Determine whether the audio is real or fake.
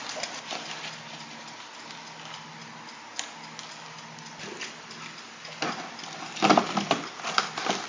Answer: real